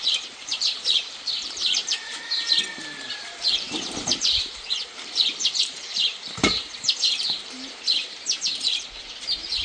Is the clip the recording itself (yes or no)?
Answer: no